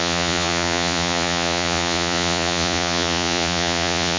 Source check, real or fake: fake